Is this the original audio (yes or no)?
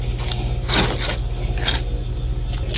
yes